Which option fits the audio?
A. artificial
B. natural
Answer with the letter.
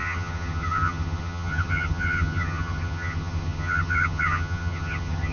A